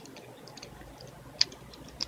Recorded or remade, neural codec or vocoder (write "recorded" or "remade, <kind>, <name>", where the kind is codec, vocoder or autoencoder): recorded